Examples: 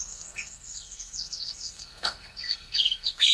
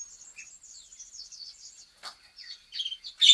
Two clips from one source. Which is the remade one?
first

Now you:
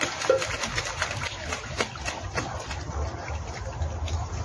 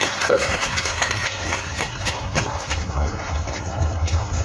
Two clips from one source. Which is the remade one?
second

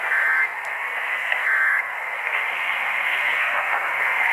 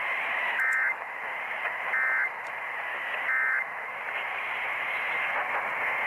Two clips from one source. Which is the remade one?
first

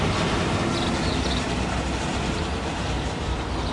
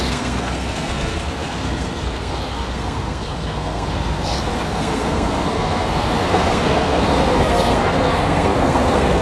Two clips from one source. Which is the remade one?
second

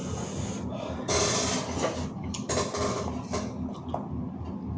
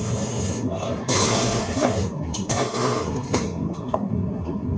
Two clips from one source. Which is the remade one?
second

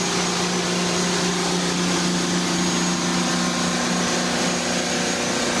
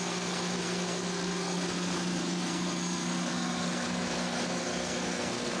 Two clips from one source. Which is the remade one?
second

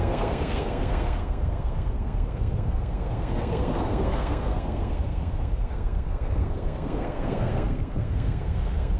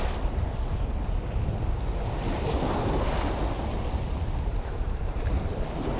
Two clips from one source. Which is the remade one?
first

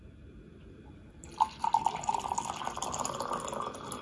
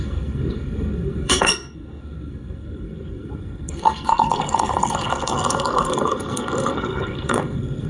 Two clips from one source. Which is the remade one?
second